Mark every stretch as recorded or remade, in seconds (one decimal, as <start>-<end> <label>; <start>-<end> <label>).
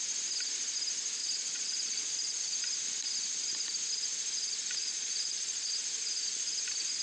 0.0-1.2 recorded; 1.2-2.4 remade; 2.4-4.8 recorded; 4.8-5.7 remade; 5.7-7.0 recorded